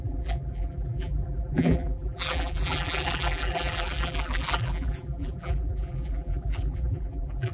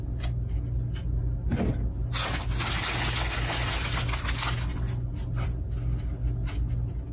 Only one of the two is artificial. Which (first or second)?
first